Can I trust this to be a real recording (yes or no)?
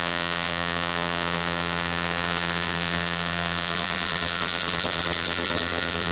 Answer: no